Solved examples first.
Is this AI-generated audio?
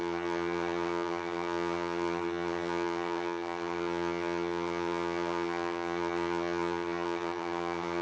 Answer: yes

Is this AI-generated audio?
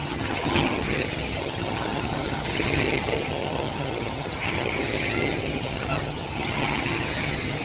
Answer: yes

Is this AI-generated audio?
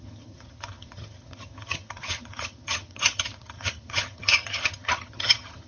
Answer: yes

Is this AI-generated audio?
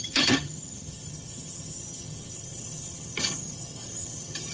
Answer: yes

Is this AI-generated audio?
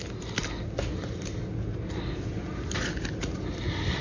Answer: no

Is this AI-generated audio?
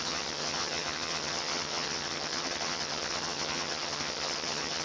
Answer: yes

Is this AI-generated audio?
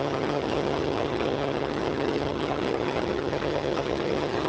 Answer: yes